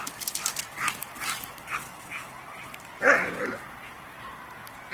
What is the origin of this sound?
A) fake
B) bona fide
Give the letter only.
B